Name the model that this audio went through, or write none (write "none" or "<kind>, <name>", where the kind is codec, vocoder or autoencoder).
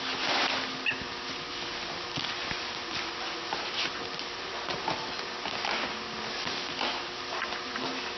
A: none